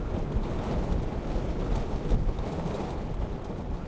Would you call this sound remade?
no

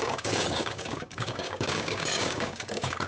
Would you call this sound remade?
yes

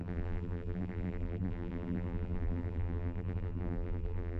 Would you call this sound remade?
yes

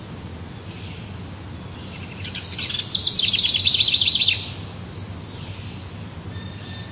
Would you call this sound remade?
no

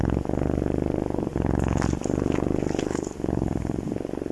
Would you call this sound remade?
no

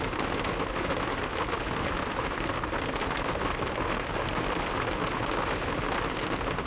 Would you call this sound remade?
no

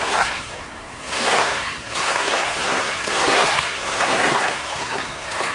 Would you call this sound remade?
yes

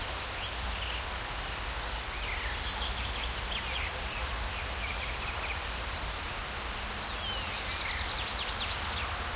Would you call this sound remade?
no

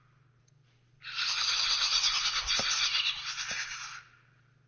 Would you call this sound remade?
no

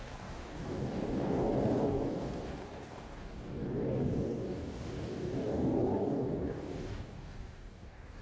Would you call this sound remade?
yes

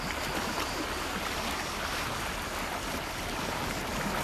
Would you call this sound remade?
no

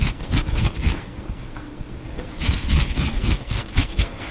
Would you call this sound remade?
yes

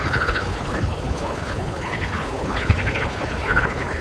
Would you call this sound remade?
yes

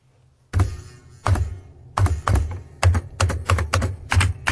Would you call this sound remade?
no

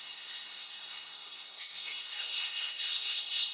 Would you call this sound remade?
yes